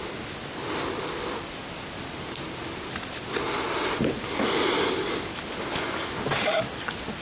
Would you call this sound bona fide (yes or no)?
yes